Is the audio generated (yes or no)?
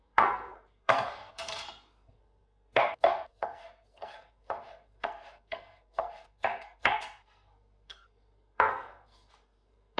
yes